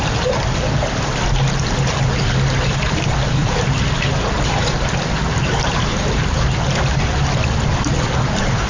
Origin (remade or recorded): recorded